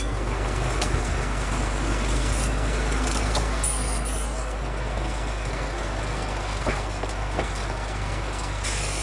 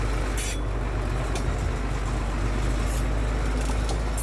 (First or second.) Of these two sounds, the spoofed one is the first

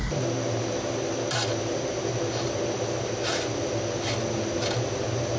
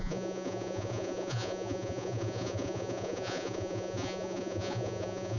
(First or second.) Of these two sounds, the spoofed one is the second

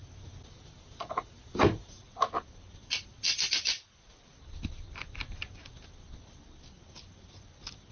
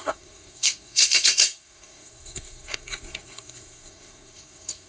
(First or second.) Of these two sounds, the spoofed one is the second